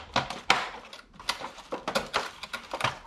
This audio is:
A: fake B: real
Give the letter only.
B